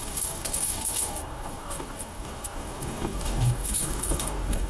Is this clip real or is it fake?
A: fake